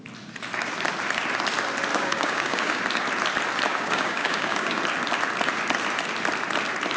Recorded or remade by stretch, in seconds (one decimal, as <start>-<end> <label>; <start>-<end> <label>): 0.0-1.9 recorded; 1.9-2.8 remade; 2.8-3.7 recorded; 3.7-4.8 remade; 4.8-7.0 recorded